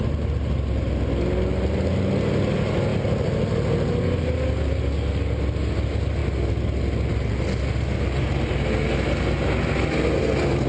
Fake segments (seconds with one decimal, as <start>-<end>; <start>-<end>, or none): none